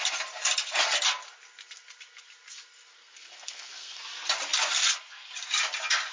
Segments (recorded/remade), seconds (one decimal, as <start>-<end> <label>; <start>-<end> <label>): 0.0-3.0 recorded; 3.0-4.0 remade; 4.0-6.1 recorded